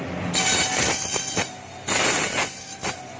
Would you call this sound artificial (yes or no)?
no